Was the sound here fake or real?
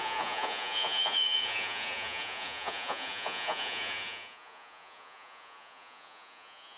fake